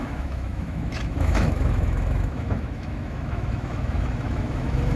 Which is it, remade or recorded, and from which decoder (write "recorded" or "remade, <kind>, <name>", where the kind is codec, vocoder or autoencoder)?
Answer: remade, autoencoder, DAC-VAE